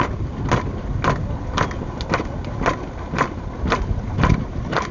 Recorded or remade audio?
recorded